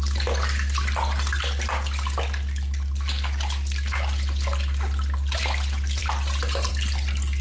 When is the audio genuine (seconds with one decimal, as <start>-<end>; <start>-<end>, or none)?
0.0-7.4